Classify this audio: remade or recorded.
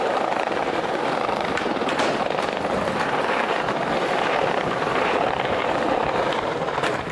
remade